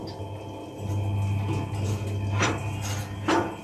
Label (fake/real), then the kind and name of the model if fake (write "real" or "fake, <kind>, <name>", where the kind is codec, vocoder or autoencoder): real